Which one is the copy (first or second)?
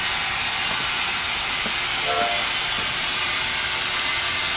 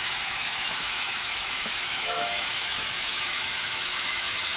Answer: second